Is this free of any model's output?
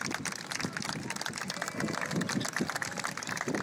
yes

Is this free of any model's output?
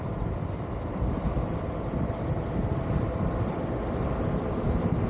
no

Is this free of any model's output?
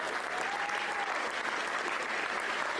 yes